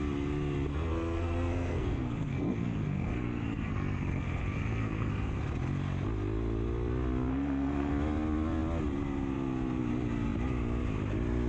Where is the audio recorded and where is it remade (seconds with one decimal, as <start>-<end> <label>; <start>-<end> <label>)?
0.0-0.7 recorded; 0.7-5.4 remade; 5.4-7.3 recorded; 7.3-7.9 remade; 7.9-11.5 recorded